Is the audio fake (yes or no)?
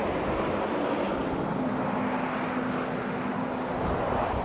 no